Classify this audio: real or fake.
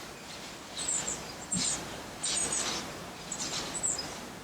fake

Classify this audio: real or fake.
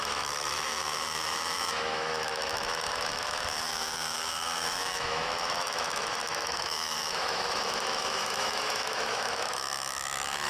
fake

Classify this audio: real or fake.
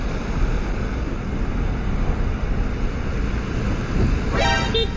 real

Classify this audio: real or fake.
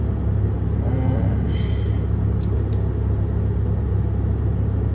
real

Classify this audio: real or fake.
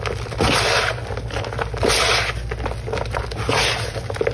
real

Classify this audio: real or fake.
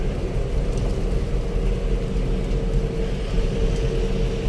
real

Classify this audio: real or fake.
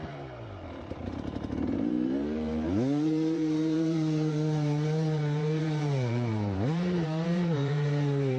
fake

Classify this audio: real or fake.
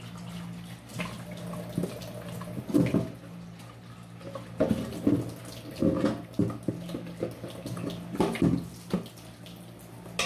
real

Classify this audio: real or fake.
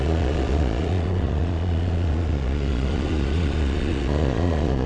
fake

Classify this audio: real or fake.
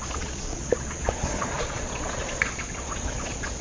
fake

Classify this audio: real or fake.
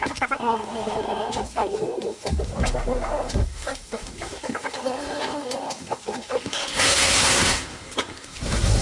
fake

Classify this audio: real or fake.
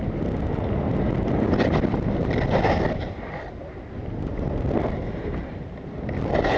real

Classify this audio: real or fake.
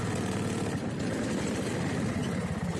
real